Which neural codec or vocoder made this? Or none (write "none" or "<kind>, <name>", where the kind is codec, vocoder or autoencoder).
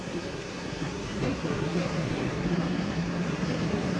codec, SNAC